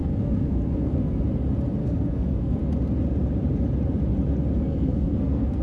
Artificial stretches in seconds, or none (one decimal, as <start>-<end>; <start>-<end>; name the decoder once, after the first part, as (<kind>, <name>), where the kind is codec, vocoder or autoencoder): 0.0-1.2 (codec, SNAC); 1.8-2.6; 4.5-5.6